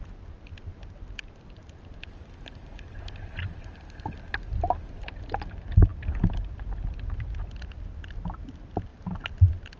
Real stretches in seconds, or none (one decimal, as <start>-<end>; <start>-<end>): 0.0-9.8